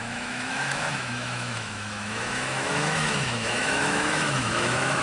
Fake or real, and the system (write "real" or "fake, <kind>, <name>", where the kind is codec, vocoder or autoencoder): fake, autoencoder, DAC-VAE